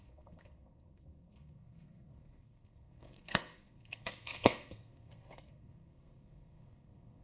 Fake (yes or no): yes